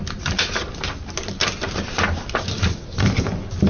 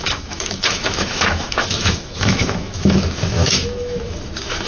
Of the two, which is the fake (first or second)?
second